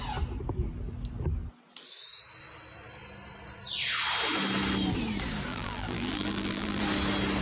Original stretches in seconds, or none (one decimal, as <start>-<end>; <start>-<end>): 0.0-5.5; 6.8-7.4